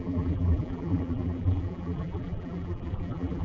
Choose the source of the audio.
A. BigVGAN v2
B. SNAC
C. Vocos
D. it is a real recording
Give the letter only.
A